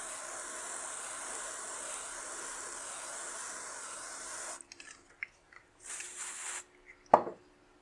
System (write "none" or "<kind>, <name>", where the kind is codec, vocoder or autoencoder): none